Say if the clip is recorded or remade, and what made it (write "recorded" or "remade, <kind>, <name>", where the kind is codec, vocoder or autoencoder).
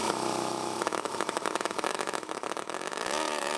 remade, autoencoder, DAC-VAE